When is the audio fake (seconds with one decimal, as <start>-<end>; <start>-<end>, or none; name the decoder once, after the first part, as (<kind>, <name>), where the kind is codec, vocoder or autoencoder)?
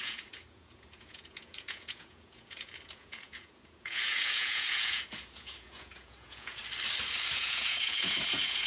0.0-6.6 (vocoder, Vocos); 7.3-8.7